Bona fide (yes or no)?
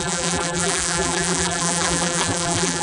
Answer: no